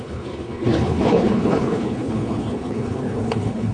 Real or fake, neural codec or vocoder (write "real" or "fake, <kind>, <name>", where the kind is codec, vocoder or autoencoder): fake, codec, HILCodec